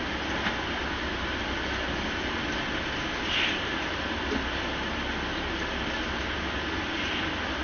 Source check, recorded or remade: recorded